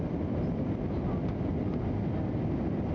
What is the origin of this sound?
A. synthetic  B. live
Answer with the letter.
B